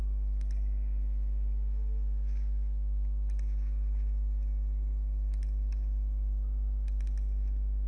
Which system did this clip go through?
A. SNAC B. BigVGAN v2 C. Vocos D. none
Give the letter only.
D